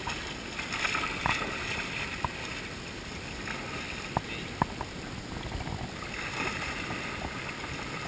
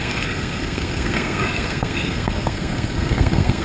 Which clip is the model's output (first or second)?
second